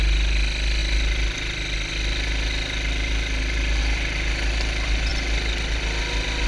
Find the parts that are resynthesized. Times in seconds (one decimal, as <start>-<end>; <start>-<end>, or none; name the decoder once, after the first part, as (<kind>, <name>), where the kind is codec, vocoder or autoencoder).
none